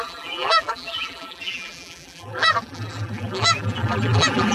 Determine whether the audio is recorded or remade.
remade